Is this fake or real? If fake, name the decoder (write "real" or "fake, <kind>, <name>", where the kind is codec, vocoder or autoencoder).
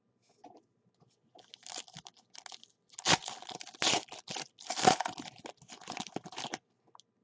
real